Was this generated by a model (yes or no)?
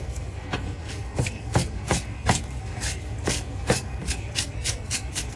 yes